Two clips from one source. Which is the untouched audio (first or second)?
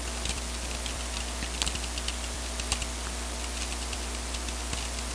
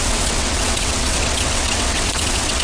first